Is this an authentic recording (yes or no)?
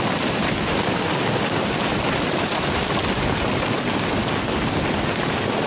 yes